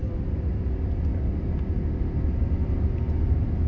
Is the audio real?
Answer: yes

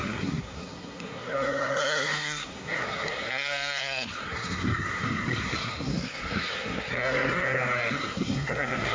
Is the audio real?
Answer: no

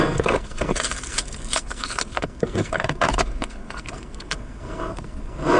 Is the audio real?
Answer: no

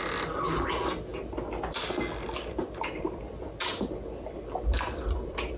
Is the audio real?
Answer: yes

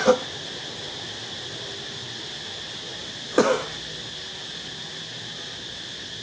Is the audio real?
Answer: yes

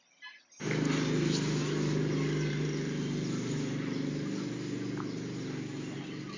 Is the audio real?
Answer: yes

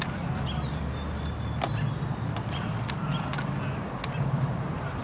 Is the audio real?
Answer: yes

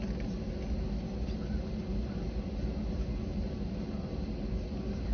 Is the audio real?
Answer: yes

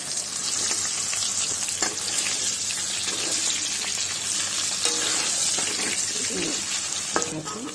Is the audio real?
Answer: yes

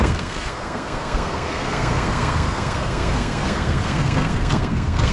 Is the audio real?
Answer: no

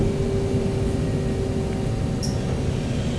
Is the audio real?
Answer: yes